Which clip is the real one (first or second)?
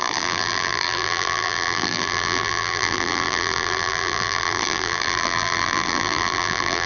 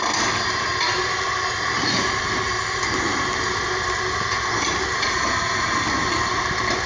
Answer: second